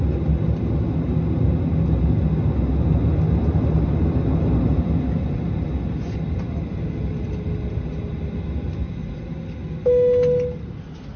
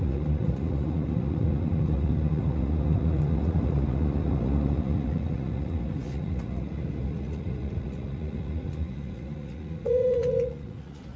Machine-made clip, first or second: second